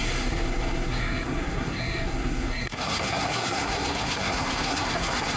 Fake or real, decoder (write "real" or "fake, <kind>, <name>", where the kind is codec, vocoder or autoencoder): fake, codec, SNAC